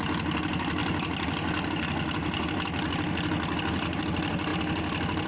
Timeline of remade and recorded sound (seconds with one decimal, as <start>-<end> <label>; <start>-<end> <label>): 0.0-5.3 recorded